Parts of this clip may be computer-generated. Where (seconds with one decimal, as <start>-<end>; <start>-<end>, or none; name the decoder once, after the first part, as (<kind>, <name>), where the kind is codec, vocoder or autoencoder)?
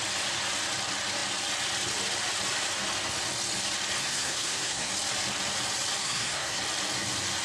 4.0-4.9 (codec, SNAC); 6.0-6.6